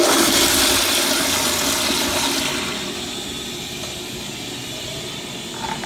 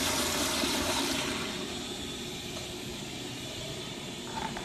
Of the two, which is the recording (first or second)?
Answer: first